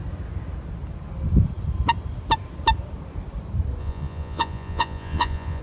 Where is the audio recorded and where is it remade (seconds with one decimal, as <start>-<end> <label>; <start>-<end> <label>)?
0.0-3.8 recorded; 3.8-5.6 remade